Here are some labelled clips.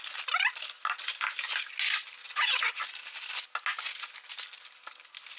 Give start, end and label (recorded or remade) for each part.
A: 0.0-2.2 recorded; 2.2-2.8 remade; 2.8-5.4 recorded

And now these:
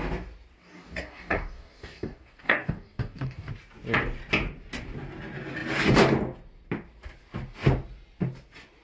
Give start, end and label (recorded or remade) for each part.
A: 0.0-0.6 recorded; 0.6-3.5 remade; 3.5-8.8 recorded